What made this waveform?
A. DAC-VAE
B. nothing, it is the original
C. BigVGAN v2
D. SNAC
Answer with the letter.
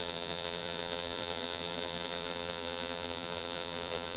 C